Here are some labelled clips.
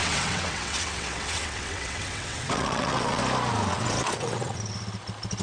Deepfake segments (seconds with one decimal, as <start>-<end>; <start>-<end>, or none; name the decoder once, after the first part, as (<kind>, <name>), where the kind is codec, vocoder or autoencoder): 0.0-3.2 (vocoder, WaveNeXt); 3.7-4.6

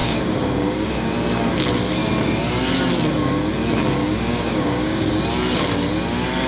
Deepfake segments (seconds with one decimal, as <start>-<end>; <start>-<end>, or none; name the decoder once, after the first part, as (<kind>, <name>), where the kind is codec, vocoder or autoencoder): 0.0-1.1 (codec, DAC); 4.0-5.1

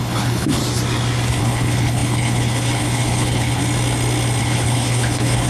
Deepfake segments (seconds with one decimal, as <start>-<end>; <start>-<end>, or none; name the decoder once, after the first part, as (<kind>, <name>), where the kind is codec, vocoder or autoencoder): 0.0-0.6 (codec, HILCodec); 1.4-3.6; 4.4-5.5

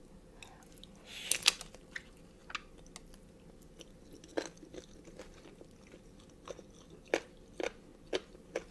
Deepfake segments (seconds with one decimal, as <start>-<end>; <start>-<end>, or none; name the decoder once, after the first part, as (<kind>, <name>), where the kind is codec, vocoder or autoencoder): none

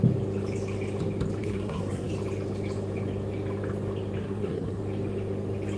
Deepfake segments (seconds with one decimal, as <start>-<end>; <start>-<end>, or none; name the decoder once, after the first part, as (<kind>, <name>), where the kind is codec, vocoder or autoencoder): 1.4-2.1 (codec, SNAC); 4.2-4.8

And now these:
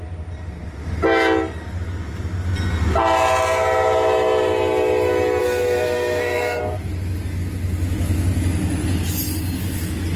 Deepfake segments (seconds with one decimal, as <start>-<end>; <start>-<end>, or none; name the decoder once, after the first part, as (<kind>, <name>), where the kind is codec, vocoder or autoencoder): 5.4-6.6 (codec, SNAC)

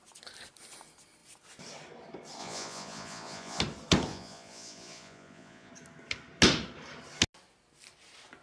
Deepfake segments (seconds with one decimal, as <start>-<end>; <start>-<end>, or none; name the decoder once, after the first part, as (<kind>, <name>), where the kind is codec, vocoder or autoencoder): 2.4-3.6 (vocoder, Vocos); 4.1-5.7